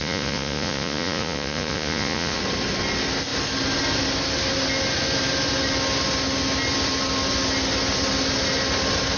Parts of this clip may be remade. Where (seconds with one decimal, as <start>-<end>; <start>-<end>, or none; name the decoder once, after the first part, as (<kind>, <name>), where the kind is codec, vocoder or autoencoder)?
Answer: 0.0-2.4 (vocoder, Vocos)